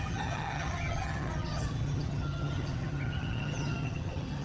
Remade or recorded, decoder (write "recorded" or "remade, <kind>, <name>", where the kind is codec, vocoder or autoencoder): remade, vocoder, HiFi-GAN